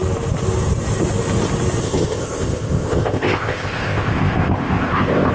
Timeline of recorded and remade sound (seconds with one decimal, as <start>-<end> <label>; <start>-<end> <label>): 0.0-1.8 recorded; 1.8-5.3 remade